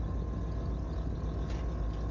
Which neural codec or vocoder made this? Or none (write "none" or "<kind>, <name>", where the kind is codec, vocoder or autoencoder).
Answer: none